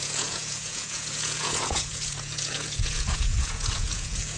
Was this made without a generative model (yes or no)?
no